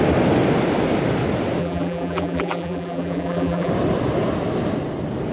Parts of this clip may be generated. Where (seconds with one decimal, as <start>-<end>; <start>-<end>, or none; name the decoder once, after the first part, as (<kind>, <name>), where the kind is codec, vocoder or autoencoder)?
1.6-3.7 (vocoder, BigVGAN v2)